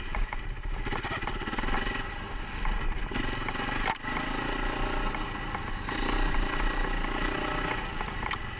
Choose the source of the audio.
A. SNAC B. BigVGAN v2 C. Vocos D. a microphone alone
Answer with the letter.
D